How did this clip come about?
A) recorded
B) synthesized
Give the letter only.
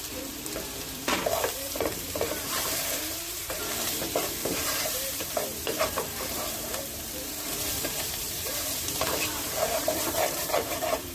B